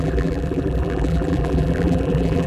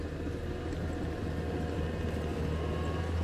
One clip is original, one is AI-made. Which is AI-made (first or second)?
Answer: first